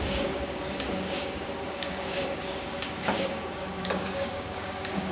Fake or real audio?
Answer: fake